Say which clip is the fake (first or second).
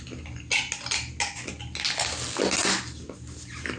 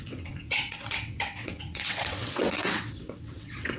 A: second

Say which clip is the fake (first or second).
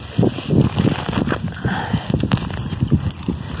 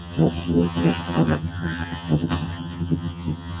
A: second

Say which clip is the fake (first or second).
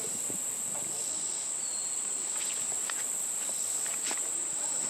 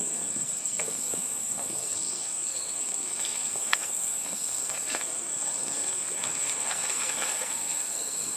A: second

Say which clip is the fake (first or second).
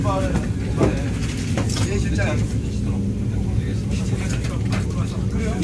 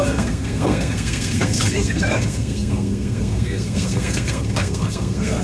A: second